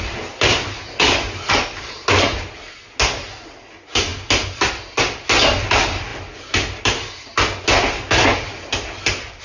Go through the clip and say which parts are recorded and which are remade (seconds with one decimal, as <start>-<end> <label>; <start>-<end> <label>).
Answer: 0.0-9.4 recorded